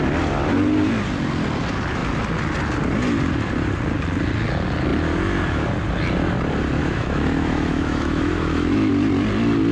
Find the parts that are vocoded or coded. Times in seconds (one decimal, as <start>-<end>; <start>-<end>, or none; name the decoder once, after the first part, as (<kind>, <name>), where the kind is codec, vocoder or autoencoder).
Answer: 6.8-8.9 (autoencoder, DAC-VAE)

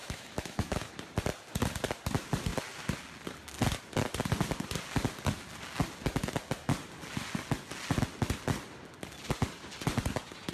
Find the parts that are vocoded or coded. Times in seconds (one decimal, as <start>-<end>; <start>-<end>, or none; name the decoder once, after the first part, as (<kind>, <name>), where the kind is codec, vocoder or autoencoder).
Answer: 0.0-0.9 (autoencoder, DAC-VAE)

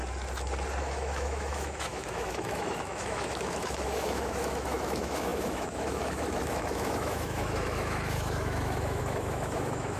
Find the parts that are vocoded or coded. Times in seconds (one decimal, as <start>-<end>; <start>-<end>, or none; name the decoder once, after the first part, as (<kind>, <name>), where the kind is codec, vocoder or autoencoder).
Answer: 0.8-10.0 (autoencoder, DAC-VAE)

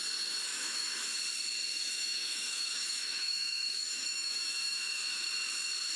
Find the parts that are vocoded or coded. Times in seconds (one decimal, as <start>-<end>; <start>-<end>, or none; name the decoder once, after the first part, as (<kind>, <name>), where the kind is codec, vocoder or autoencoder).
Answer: 0.5-1.2 (autoencoder, DAC-VAE); 1.7-5.3

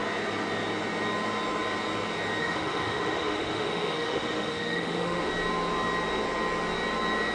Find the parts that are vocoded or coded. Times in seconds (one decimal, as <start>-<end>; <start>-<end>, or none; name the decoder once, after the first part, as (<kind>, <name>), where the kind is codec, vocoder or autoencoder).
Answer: 2.4-5.3 (autoencoder, DAC-VAE)